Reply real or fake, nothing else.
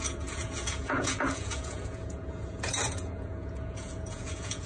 fake